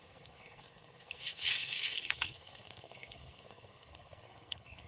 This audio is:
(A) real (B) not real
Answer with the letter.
B